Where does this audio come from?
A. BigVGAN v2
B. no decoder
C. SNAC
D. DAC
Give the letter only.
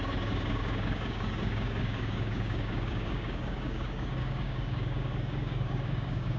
D